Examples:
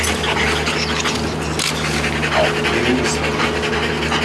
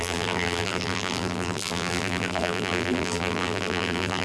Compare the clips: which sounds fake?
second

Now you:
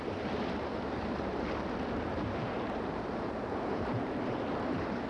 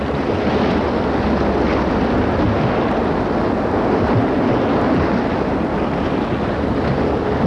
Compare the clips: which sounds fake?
first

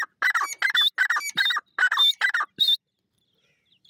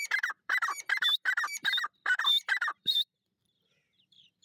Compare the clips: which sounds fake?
second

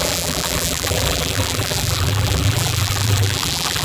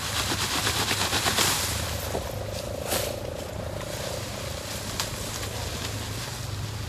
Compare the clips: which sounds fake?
first